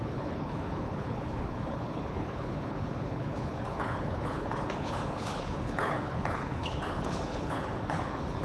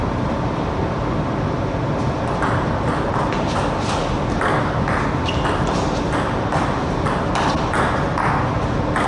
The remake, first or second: first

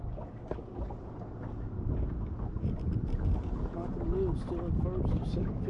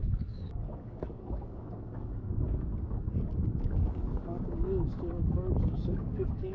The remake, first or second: second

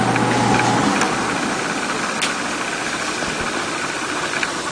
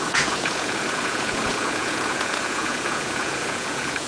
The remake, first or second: second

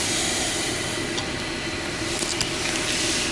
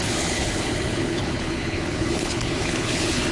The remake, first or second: second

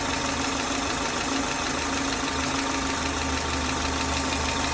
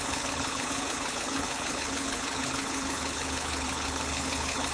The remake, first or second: second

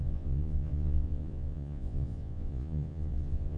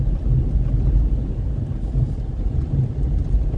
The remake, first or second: first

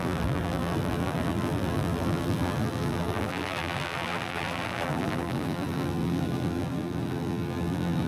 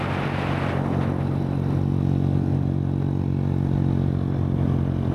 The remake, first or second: first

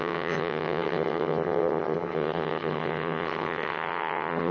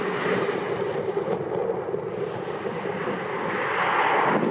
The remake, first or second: first